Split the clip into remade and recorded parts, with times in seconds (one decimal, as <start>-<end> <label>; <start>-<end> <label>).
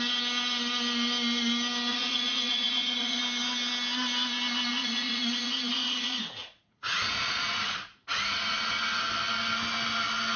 0.0-1.9 recorded; 1.9-3.2 remade; 3.2-4.7 recorded; 4.7-8.5 remade; 8.5-10.4 recorded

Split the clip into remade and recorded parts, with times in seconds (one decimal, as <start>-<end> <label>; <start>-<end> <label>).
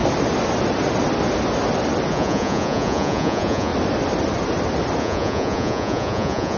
0.0-2.1 recorded; 2.1-3.7 remade; 3.7-5.0 recorded; 5.0-6.6 remade